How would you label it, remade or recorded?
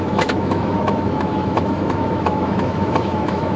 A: remade